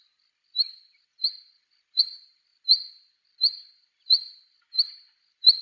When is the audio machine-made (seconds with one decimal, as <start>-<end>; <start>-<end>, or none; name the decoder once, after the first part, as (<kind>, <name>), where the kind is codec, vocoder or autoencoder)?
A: none